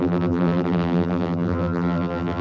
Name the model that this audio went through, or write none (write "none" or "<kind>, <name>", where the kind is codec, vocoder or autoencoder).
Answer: vocoder, BigVGAN v2